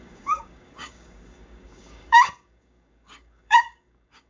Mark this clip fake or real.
fake